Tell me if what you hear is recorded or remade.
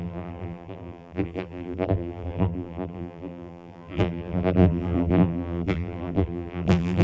remade